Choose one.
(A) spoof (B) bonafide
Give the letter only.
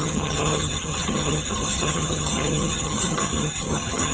A